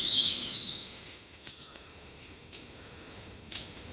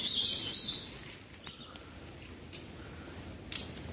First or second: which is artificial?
first